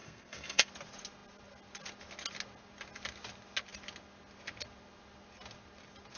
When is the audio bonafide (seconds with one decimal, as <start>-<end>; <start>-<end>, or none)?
0.7-6.2